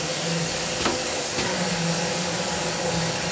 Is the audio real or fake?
fake